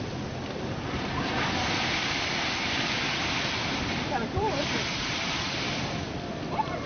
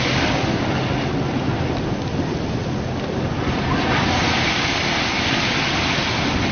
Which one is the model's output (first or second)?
first